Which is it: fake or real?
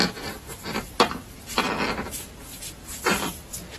real